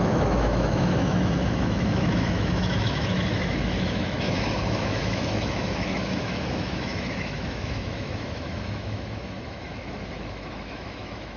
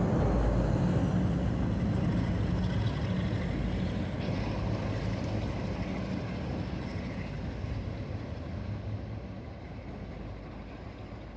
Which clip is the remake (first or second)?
first